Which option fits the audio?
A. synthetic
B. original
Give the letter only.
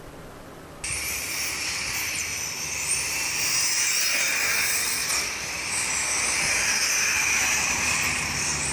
A